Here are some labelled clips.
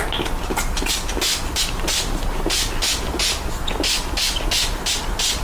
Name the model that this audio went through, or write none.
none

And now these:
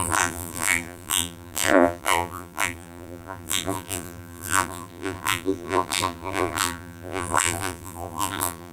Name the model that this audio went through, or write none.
vocoder, BigVGAN v2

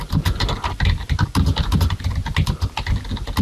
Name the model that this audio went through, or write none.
none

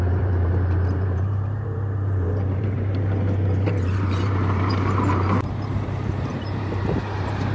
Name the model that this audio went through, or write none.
vocoder, BigVGAN v2